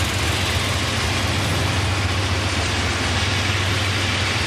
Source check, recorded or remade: recorded